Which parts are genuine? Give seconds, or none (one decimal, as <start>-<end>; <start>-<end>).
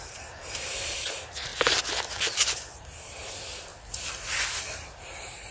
1.5-2.8; 3.7-4.6